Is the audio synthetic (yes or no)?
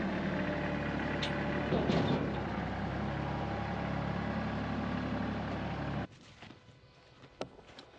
no